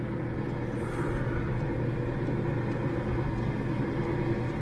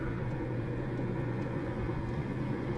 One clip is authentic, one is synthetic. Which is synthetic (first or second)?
second